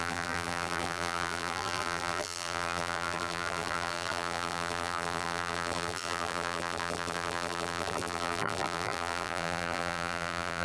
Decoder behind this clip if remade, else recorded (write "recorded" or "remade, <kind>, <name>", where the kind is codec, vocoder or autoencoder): remade, vocoder, BigVGAN v2